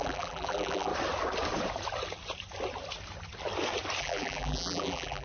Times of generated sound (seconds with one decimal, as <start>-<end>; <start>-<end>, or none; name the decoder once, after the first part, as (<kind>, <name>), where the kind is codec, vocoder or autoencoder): 0.0-0.9 (vocoder, BigVGAN v2); 4.0-5.2